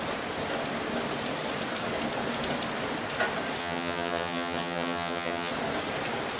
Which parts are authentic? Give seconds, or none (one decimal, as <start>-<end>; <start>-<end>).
0.0-3.6; 5.5-6.4